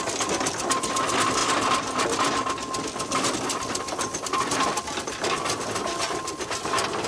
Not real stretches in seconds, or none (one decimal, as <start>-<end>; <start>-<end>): none